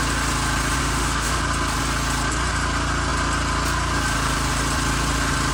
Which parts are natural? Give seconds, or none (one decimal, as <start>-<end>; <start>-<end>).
0.0-0.8; 1.4-5.5